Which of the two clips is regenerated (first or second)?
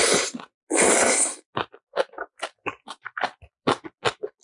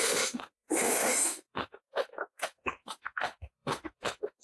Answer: second